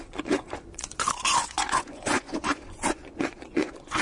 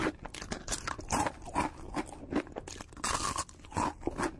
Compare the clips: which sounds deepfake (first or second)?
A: first